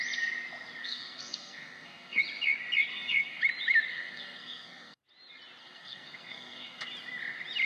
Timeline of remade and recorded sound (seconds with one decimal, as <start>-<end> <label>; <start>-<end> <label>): 0.0-0.8 recorded; 0.8-2.2 remade; 2.2-2.9 recorded; 2.9-3.4 remade; 3.4-3.9 recorded; 3.9-5.0 remade; 5.0-5.6 recorded; 5.6-6.8 remade; 6.8-7.7 recorded